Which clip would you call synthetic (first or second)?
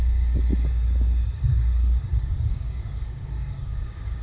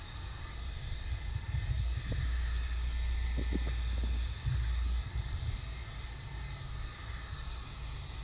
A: first